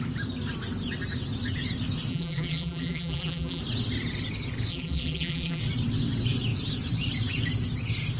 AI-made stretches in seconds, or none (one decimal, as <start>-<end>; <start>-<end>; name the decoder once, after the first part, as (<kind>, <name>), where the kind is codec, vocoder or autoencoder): 2.1-3.6 (vocoder, BigVGAN v2); 4.7-5.6